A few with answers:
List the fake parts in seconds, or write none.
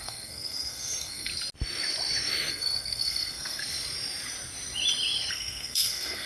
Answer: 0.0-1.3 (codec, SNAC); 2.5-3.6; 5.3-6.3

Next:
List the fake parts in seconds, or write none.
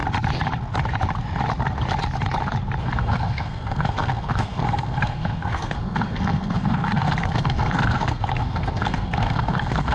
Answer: 2.8-9.9 (codec, SNAC)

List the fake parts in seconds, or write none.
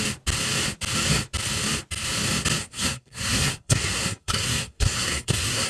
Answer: 2.6-5.7 (codec, SNAC)